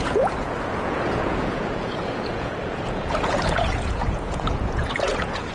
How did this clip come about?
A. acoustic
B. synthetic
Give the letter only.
B